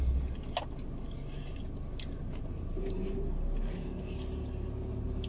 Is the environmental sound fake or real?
real